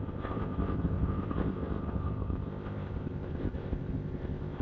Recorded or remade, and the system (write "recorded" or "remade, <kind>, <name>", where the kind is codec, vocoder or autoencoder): remade, codec, ZipCodec